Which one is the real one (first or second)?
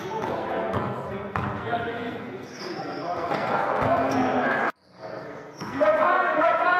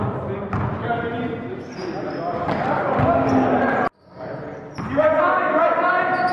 second